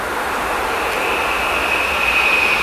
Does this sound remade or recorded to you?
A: recorded